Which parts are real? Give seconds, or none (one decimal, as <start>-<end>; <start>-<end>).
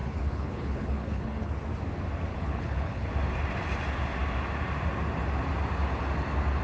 1.5-2.3; 3.1-6.6